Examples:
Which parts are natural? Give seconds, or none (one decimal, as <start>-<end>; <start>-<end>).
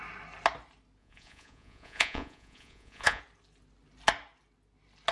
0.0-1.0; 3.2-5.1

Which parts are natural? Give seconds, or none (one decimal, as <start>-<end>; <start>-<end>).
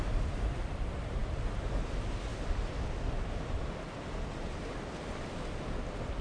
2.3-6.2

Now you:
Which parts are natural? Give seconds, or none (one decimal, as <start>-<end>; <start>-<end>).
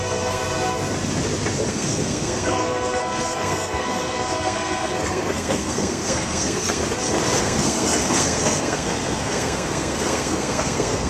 0.4-1.7; 6.8-7.4